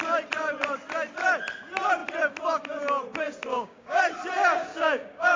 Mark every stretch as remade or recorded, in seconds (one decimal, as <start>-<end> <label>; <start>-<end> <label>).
0.0-3.5 recorded; 3.5-4.0 remade; 4.0-4.6 recorded; 4.6-5.4 remade